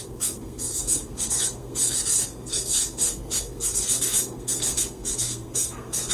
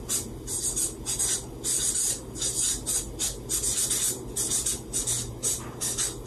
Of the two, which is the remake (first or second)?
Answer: first